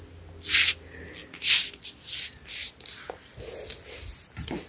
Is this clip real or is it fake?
real